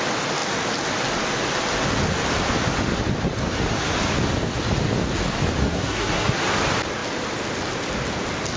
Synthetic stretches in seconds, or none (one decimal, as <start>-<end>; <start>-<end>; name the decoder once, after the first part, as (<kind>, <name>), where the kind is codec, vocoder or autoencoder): 5.6-6.4 (codec, SNAC)